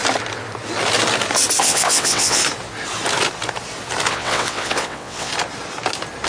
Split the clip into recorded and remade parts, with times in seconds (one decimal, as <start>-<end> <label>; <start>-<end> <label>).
0.0-1.6 recorded; 1.6-2.4 remade; 2.4-4.1 recorded; 4.1-5.3 remade; 5.3-6.3 recorded